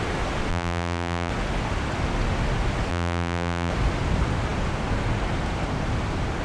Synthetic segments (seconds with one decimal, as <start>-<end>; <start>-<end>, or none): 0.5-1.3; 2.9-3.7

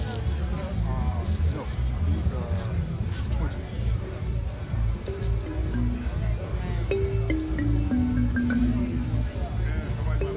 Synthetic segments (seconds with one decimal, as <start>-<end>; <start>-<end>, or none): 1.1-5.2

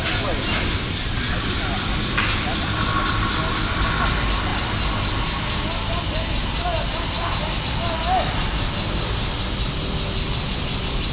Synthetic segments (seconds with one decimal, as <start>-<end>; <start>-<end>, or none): none